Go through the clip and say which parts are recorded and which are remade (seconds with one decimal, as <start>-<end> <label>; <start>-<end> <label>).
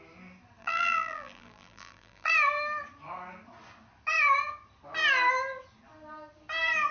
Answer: 0.0-0.6 recorded; 0.6-2.3 remade; 2.3-6.9 recorded